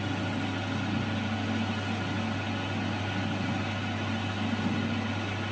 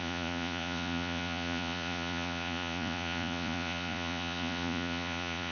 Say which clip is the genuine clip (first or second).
first